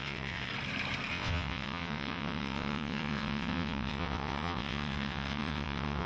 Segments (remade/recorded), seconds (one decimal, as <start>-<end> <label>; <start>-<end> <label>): 0.0-0.5 remade; 0.5-1.1 recorded; 1.1-6.1 remade